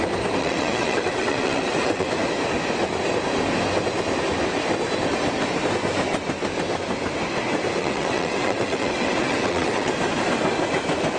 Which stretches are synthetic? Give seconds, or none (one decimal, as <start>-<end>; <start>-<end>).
0.4-2.1; 7.8-9.9